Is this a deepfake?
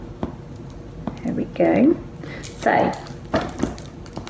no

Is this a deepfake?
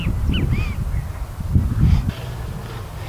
no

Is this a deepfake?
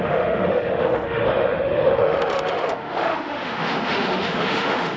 yes